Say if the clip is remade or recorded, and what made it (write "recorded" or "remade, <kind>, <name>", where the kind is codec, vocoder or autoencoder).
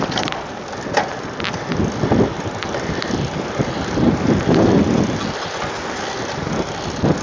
recorded